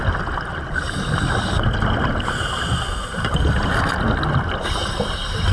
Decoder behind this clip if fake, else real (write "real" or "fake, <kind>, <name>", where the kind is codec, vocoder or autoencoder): real